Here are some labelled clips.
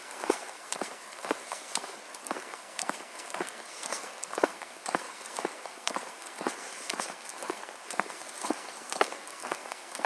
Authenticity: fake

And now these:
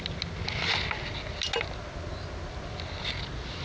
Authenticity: real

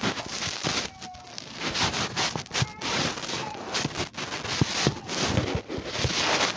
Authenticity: real